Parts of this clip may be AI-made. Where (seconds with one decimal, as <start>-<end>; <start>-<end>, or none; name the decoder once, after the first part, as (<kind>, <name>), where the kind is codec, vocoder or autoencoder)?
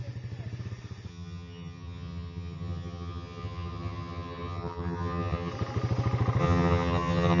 1.1-5.5 (vocoder, HiFi-GAN); 6.4-7.4